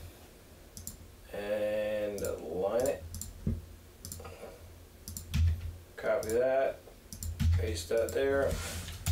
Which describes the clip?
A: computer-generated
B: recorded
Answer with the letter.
B